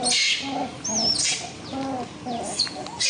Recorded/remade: recorded